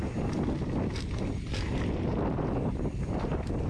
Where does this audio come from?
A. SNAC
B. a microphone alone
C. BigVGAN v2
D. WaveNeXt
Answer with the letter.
B